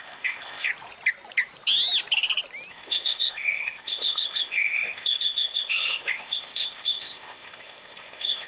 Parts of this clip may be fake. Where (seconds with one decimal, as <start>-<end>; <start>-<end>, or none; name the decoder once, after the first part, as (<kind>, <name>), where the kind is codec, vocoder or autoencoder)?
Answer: 0.0-0.7 (codec, ZipCodec); 2.7-8.5